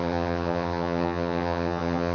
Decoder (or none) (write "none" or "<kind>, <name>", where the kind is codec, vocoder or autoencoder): vocoder, HiFi-GAN